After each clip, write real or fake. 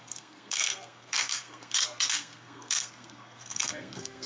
fake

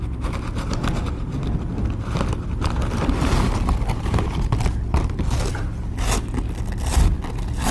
real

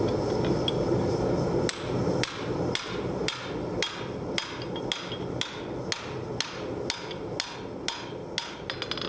real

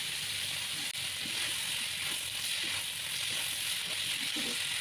real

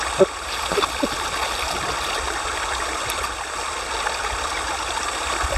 real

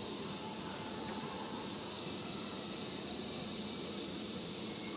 fake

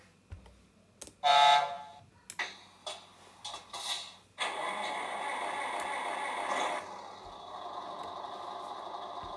real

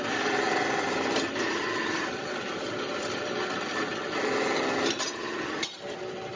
real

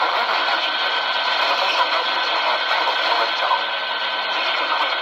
real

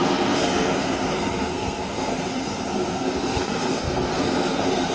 fake